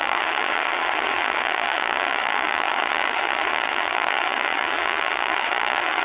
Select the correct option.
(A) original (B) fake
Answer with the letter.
B